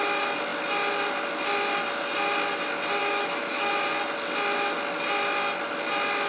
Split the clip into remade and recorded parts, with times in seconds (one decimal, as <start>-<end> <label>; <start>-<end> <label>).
0.0-3.0 recorded; 3.0-3.7 remade; 3.7-6.3 recorded